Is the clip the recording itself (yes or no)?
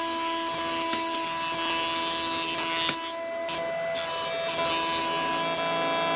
yes